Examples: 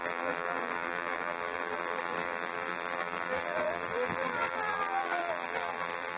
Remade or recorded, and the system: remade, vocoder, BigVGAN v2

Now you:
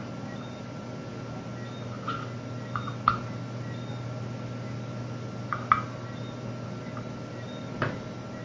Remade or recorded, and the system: recorded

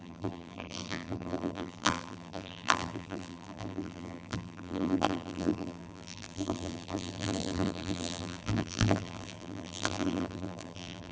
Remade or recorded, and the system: remade, vocoder, BigVGAN v2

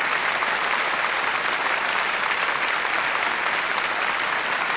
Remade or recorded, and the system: recorded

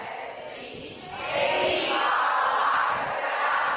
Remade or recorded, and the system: recorded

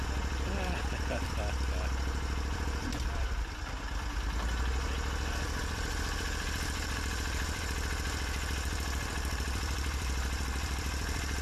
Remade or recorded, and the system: remade, vocoder, BigVGAN v2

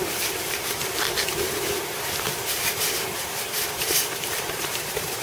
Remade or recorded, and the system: remade, vocoder, BigVGAN v2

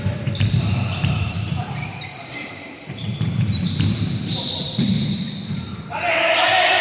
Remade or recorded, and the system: remade, vocoder, BigVGAN v2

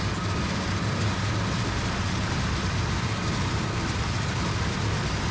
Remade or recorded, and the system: remade, vocoder, BigVGAN v2